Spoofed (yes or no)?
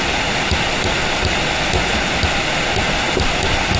no